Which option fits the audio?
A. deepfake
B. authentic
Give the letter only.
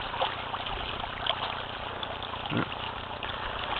B